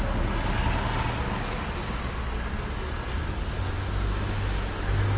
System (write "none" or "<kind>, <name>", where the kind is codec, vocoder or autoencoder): none